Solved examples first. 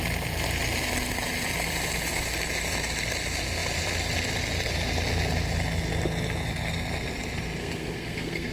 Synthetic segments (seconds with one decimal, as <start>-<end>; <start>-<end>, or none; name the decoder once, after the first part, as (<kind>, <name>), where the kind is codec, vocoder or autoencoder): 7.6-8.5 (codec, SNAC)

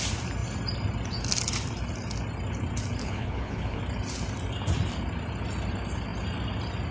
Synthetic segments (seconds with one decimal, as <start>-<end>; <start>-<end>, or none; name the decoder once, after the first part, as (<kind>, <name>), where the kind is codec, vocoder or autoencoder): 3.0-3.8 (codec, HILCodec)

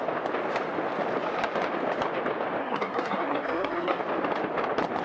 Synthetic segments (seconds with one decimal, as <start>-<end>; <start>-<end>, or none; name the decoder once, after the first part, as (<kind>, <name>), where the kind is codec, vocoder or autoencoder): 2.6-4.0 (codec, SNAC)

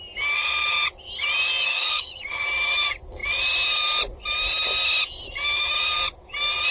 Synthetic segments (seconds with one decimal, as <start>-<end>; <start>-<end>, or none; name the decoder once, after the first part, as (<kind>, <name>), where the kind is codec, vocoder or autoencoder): 1.5-2.1 (codec, DAC)